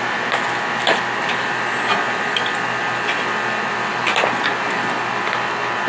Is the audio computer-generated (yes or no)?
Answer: no